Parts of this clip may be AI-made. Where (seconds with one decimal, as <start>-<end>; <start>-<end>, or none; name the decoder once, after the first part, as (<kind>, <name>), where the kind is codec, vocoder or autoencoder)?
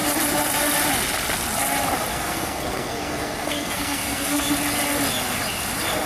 2.1-4.5 (codec, SNAC)